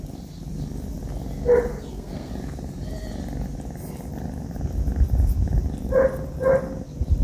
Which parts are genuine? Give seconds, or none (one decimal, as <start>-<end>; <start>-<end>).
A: 0.0-1.7; 2.3-7.2